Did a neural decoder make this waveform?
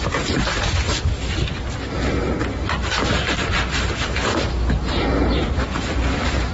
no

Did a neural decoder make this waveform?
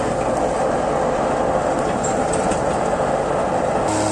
no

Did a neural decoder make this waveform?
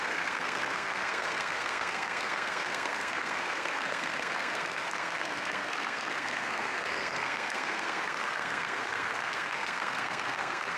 yes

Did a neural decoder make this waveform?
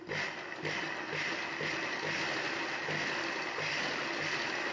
no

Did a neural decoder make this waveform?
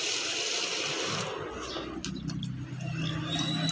no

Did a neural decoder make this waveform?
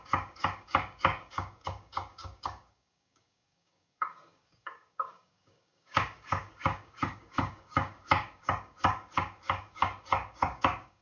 yes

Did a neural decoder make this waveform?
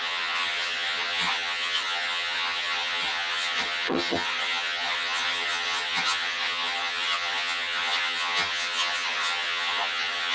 yes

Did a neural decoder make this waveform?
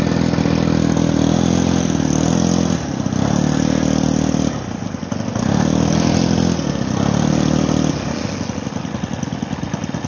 no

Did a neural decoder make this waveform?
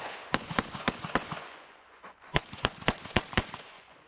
yes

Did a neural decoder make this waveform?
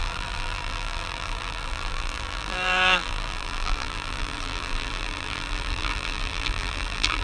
yes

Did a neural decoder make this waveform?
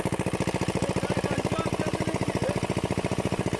no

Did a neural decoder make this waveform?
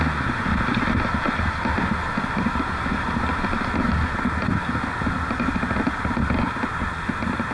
no